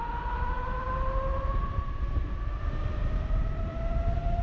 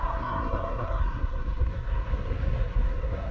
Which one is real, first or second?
first